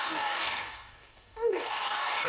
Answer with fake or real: fake